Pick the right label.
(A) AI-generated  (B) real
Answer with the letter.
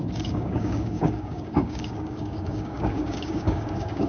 A